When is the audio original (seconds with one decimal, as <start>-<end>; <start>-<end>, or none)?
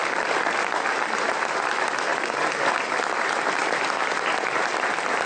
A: 2.1-2.8